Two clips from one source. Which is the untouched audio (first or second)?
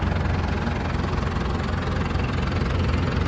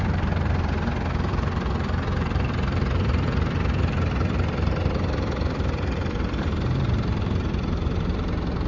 first